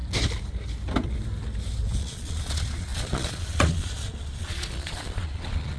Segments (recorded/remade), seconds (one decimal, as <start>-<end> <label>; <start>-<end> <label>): 0.0-2.0 recorded; 2.0-5.8 remade